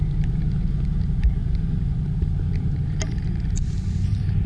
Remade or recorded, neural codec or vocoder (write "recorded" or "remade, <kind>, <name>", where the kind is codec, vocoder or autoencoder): remade, vocoder, BigVGAN v2